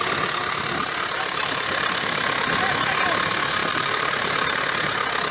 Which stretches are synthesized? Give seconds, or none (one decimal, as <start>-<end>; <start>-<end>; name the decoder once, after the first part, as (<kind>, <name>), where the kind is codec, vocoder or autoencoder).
0.4-2.6 (vocoder, BigVGAN v2); 3.6-4.6

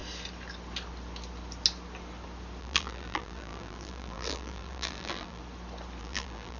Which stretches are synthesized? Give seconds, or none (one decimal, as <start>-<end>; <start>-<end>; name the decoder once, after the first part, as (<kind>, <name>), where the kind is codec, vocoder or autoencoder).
2.6-5.4 (vocoder, BigVGAN v2); 6.0-6.6

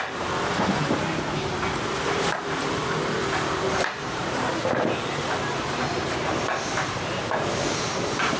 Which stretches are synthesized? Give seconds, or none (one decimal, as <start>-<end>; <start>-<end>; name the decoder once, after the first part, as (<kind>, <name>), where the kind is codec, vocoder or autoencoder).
0.0-2.8 (vocoder, BigVGAN v2); 4.0-8.4

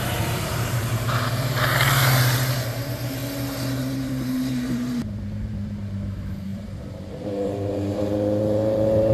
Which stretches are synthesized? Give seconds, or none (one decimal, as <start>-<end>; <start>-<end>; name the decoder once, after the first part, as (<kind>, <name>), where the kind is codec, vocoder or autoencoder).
0.0-3.2 (vocoder, BigVGAN v2); 3.8-9.1